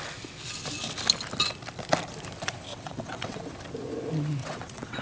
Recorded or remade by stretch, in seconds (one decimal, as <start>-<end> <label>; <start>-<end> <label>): 0.0-2.7 recorded; 2.7-3.4 remade; 3.4-4.4 recorded; 4.4-5.0 remade